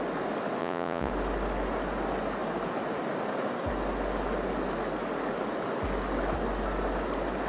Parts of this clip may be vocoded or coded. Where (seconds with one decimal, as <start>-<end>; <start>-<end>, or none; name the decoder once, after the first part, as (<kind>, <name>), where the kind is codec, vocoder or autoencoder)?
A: 0.6-1.1 (vocoder, Vocos)